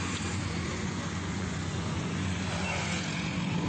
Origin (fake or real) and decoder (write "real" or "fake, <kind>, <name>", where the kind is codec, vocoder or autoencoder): fake, vocoder, Vocos